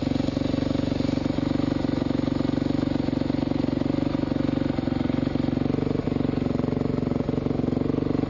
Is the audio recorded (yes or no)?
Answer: yes